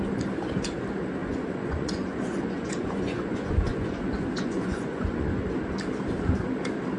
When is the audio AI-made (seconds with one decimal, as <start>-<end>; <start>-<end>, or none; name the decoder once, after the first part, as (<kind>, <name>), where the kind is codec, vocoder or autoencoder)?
1.2-5.4 (vocoder, Vocos)